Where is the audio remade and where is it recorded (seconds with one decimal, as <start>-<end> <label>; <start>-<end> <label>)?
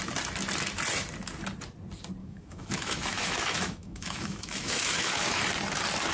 0.0-2.2 recorded; 2.2-5.4 remade; 5.4-6.1 recorded